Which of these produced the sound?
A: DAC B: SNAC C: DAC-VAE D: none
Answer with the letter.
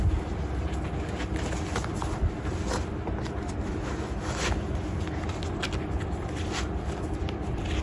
D